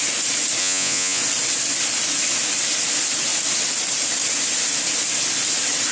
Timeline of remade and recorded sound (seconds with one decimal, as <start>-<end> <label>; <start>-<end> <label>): 0.0-0.6 recorded; 0.6-1.2 remade; 1.2-5.9 recorded